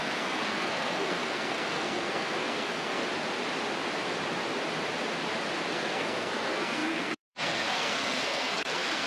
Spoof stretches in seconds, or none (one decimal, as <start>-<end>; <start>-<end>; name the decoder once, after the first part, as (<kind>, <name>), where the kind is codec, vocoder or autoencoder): 0.0-3.0 (codec, SNAC); 5.7-9.1